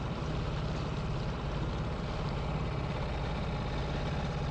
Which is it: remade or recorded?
recorded